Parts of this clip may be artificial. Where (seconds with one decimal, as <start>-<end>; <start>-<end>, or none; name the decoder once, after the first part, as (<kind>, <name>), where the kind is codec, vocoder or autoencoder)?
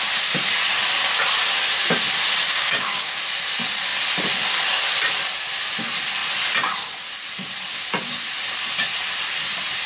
2.4-3.2 (codec, DAC)